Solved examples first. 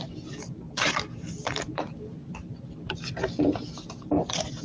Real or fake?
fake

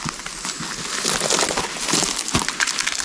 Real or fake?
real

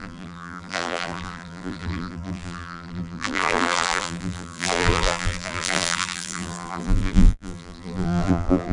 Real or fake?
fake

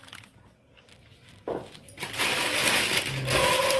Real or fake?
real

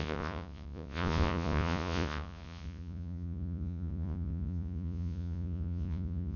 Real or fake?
fake